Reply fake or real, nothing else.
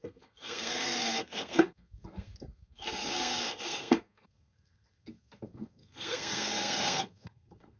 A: fake